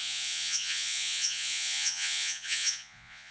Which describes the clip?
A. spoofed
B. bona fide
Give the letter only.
A